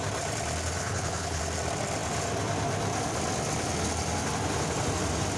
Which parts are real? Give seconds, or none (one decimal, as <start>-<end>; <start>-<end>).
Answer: 0.0-0.8; 1.4-5.4